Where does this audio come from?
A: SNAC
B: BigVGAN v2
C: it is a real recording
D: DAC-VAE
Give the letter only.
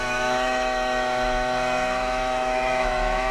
D